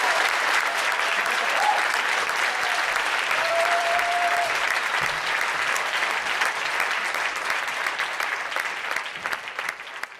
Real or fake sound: fake